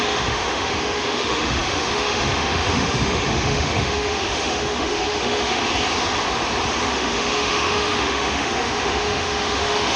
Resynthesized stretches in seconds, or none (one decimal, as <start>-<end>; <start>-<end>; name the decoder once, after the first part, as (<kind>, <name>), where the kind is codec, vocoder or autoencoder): 0.0-5.6 (autoencoder, DAC-VAE); 6.8-10.0